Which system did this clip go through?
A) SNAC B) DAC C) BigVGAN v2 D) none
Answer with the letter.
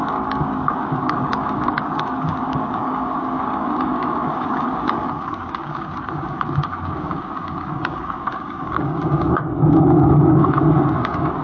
B